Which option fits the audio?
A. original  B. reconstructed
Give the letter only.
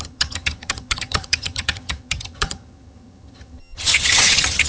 B